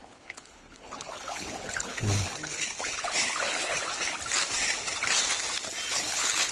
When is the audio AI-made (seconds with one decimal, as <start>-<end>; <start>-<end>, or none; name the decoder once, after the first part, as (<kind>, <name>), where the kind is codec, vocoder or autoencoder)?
0.0-3.9 (codec, HILCodec); 5.9-6.5